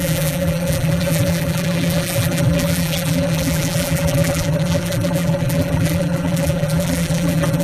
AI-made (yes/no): yes